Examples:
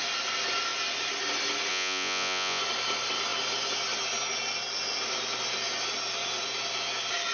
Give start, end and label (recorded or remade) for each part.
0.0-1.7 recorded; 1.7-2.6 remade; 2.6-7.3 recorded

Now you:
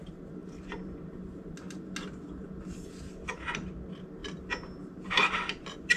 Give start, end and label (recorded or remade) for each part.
0.0-6.0 recorded

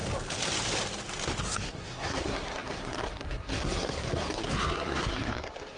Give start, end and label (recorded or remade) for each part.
0.0-1.4 recorded; 1.4-5.8 remade

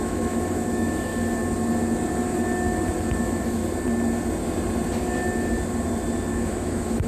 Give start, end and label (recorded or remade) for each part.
0.0-1.1 remade; 1.1-3.2 recorded; 3.2-3.6 remade; 3.6-6.3 recorded; 6.3-7.1 remade

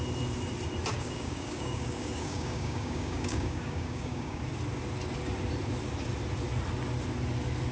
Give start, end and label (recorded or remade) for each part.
0.0-0.9 recorded; 0.9-4.4 remade; 4.4-7.7 recorded